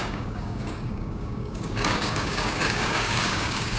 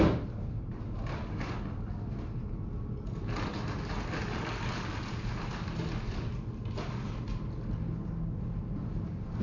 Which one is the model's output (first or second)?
first